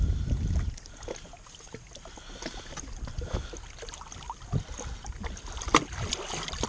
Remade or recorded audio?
recorded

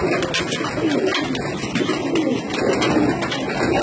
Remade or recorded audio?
recorded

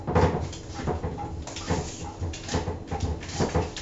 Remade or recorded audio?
recorded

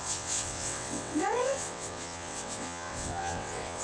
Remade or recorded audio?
remade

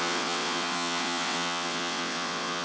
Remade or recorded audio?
remade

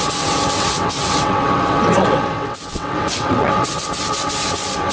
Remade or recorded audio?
remade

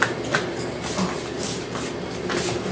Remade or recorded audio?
recorded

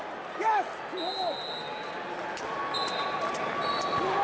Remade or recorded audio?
recorded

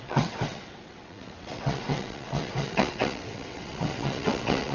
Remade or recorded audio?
remade